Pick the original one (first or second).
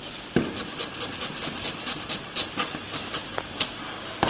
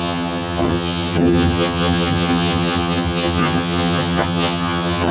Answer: first